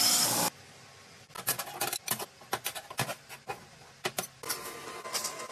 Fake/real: fake